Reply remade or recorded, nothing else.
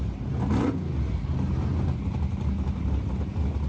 recorded